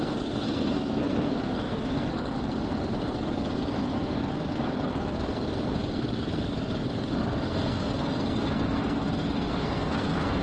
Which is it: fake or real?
fake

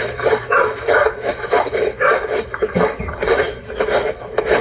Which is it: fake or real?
fake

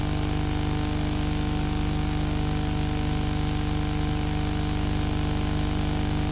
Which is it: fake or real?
real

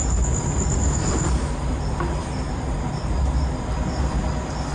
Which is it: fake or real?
real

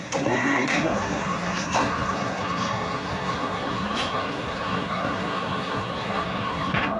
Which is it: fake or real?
fake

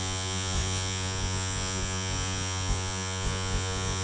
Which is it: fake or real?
fake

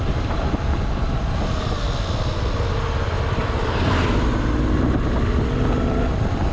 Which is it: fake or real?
real